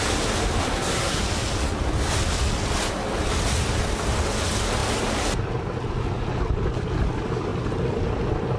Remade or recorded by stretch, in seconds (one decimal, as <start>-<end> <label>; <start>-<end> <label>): 0.0-0.6 recorded; 0.6-1.2 remade; 1.2-8.6 recorded